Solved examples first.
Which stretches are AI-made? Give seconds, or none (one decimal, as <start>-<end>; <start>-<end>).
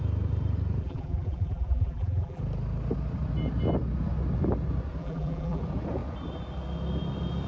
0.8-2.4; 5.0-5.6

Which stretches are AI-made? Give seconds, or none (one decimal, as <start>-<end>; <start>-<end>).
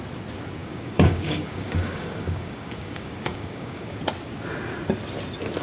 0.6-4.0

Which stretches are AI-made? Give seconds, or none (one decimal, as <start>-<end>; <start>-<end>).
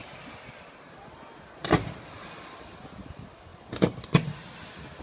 3.5-4.0